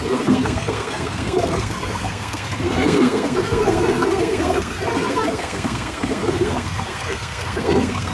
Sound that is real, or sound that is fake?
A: fake